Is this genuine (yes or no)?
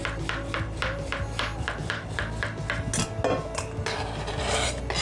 yes